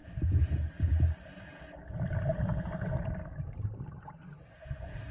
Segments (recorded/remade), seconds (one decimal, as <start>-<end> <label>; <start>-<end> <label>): 0.0-0.7 remade; 0.7-5.1 recorded